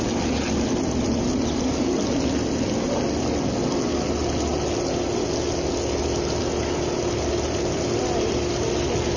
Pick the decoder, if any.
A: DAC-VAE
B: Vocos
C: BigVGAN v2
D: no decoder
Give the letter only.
D